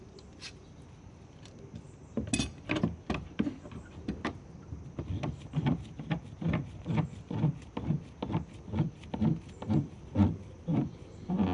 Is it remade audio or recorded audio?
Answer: recorded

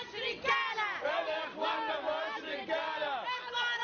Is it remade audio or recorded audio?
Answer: recorded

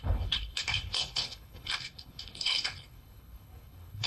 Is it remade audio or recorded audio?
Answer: remade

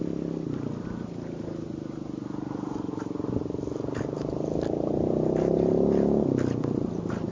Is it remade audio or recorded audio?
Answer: recorded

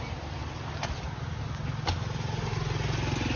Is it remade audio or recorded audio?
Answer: recorded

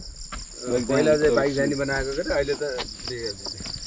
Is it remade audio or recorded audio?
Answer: recorded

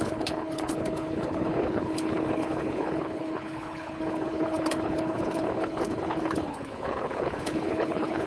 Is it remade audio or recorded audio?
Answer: remade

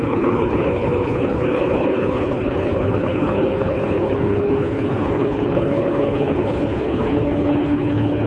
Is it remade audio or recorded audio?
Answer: remade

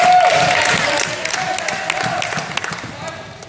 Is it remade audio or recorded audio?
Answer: recorded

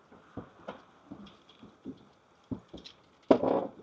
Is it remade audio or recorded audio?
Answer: recorded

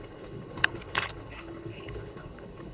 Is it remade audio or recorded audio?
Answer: remade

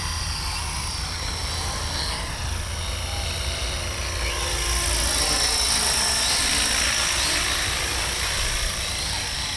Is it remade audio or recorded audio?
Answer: recorded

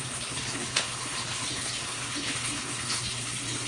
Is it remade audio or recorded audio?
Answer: remade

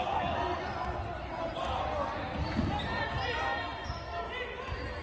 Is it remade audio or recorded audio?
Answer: recorded